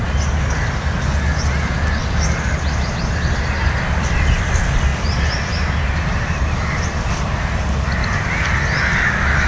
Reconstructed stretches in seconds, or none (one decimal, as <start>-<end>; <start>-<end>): 2.0-2.9; 4.9-6.7; 8.0-8.5